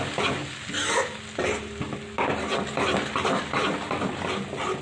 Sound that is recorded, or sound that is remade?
recorded